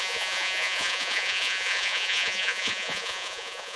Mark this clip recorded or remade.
remade